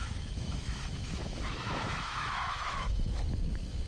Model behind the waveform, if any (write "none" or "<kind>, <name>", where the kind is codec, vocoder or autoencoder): autoencoder, DAC-VAE